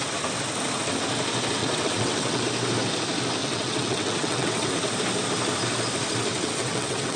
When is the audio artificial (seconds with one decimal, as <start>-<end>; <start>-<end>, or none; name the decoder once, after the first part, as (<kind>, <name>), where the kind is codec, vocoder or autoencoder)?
1.6-2.4 (vocoder, WaveNeXt); 3.4-4.7; 6.3-7.2